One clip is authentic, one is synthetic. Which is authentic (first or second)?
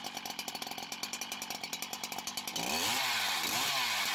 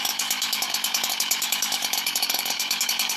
first